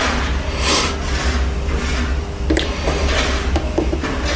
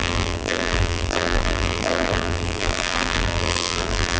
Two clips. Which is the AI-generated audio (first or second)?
second